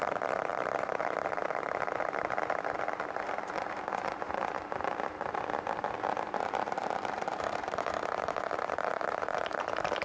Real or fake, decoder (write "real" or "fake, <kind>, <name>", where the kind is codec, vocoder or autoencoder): fake, vocoder, BigVGAN v2